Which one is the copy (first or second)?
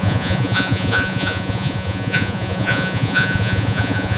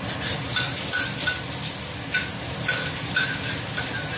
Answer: first